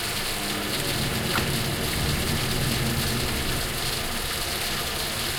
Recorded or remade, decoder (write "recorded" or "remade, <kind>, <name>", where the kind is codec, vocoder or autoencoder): recorded